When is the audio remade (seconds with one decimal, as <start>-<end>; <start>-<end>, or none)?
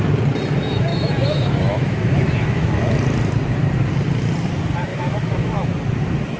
0.9-2.9; 4.9-5.7